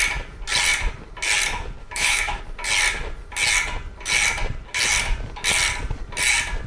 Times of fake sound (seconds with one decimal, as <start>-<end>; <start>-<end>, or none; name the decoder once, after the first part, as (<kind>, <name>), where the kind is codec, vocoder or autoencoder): 1.8-2.4 (autoencoder, DAC-VAE)